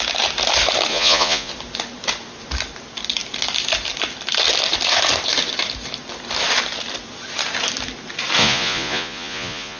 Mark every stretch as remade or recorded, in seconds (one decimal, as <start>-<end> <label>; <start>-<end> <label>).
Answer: 0.0-0.9 recorded; 0.9-1.5 remade; 1.5-8.4 recorded; 8.4-9.8 remade

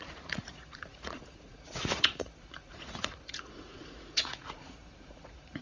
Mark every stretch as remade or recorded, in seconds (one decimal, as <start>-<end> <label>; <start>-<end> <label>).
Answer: 0.0-5.6 remade

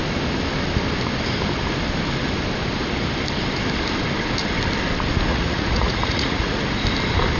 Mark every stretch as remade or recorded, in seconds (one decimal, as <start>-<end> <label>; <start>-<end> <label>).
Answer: 0.0-5.3 recorded; 5.3-6.6 remade; 6.6-7.4 recorded

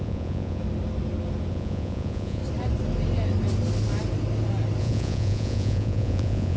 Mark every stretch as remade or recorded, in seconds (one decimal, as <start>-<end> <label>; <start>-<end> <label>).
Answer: 0.0-0.6 remade; 0.6-1.5 recorded; 1.5-2.4 remade; 2.4-4.8 recorded; 4.8-6.6 remade

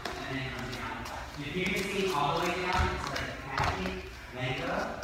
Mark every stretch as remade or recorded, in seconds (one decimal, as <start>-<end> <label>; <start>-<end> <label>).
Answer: 0.0-2.6 remade; 2.6-4.1 recorded; 4.1-5.0 remade

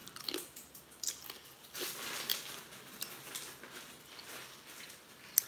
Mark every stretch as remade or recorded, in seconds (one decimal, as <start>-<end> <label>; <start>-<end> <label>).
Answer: 0.0-5.5 recorded